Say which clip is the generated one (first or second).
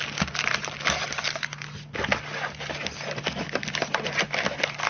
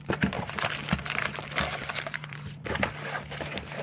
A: second